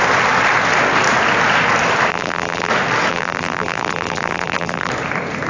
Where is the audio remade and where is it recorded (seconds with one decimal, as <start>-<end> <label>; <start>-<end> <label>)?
0.0-2.1 recorded; 2.1-2.7 remade; 2.7-3.1 recorded; 3.1-4.9 remade; 4.9-5.5 recorded